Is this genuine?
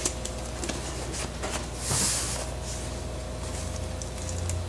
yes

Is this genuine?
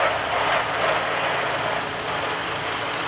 yes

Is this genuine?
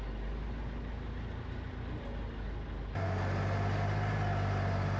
yes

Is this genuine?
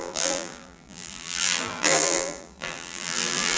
no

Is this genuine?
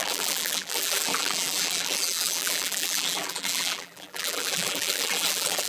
no